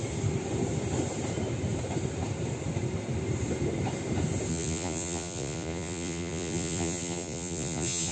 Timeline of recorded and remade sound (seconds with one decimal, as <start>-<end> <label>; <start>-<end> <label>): 0.0-4.5 recorded; 4.5-8.1 remade